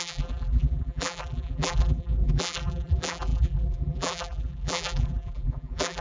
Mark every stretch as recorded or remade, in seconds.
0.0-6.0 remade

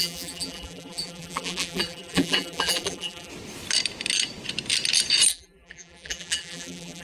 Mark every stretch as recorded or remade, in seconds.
0.0-3.3 remade; 3.3-5.3 recorded; 5.3-7.0 remade

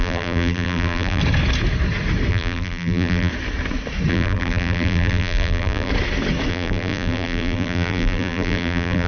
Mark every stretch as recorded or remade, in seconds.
0.0-1.2 remade; 1.2-2.3 recorded; 2.3-3.3 remade; 3.3-4.1 recorded; 4.1-5.9 remade; 5.9-6.5 recorded; 6.5-9.1 remade

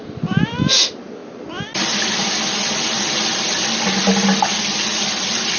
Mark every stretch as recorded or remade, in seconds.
0.0-5.6 recorded

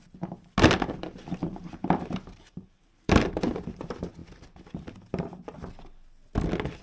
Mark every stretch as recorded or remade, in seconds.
0.0-1.4 recorded; 1.4-3.8 remade; 3.8-6.8 recorded

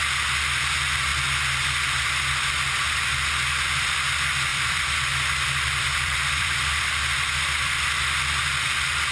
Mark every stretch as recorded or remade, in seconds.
0.0-4.5 recorded; 4.5-6.9 remade; 6.9-9.1 recorded